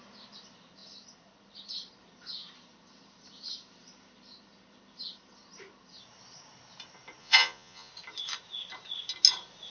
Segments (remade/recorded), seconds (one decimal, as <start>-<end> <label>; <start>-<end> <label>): 0.0-7.2 recorded; 7.2-7.9 remade; 7.9-9.7 recorded